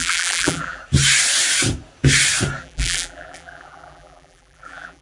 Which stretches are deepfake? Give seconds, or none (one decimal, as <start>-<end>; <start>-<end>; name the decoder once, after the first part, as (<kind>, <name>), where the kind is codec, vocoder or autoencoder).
0.0-0.8 (vocoder, BigVGAN v2); 2.6-5.0